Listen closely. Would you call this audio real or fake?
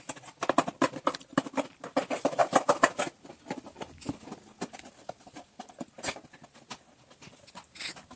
real